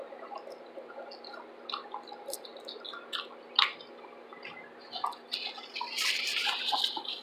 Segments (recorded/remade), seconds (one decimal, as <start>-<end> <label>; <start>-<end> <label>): 0.0-7.2 recorded

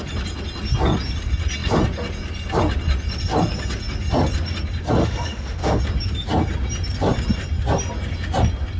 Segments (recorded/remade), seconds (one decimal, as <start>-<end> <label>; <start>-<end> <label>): 0.0-5.0 recorded; 5.0-5.8 remade; 5.8-8.8 recorded